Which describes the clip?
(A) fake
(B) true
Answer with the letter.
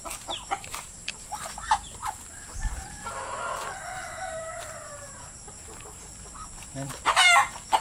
A